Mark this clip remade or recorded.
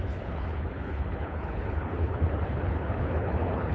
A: remade